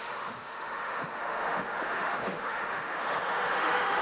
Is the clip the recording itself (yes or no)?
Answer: no